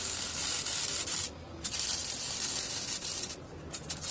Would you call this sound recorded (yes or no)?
yes